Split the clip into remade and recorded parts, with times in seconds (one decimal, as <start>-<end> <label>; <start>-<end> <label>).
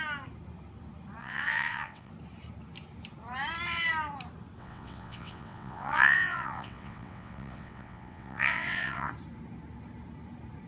0.0-1.2 recorded; 1.2-2.1 remade; 2.1-4.6 recorded; 4.6-9.1 remade; 9.1-10.7 recorded